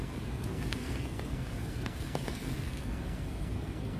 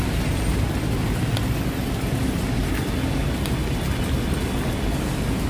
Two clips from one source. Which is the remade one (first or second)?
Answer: first